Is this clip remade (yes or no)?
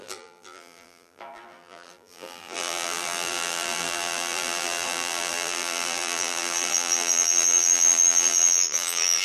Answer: yes